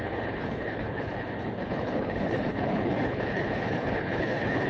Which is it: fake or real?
fake